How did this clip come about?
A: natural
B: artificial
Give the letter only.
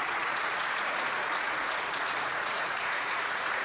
B